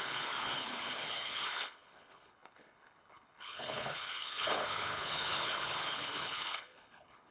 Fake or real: fake